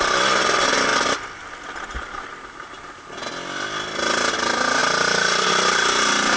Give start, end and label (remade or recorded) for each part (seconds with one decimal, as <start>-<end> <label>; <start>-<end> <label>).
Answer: 0.0-6.4 recorded